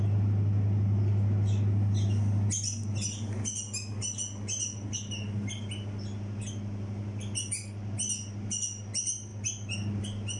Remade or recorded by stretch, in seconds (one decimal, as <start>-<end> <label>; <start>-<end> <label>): 0.0-10.4 recorded